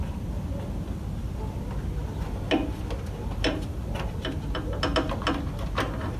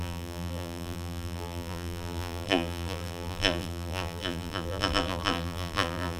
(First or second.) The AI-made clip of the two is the second